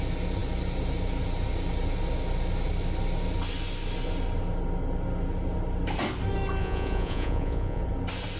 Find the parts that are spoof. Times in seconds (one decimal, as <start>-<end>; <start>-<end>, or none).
6.6-7.8